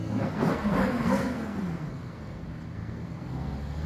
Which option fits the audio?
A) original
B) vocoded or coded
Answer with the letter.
B